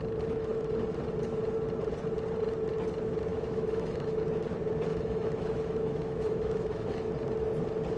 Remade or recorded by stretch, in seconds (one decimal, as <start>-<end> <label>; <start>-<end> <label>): 0.0-3.3 recorded; 3.3-4.2 remade; 4.2-4.9 recorded; 4.9-7.1 remade; 7.1-8.0 recorded